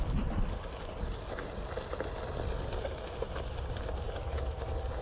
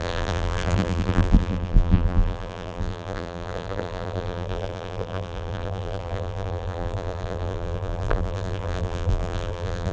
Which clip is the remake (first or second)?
second